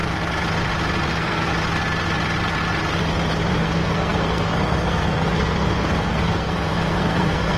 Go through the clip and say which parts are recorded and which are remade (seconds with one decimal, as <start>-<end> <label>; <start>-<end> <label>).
0.0-1.1 recorded; 1.1-1.5 remade; 1.5-3.6 recorded; 3.6-7.6 remade